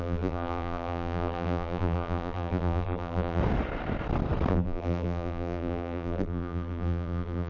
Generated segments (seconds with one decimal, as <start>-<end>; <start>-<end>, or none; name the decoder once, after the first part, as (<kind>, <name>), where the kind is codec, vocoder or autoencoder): 0.0-3.4 (vocoder, BigVGAN v2); 4.5-7.5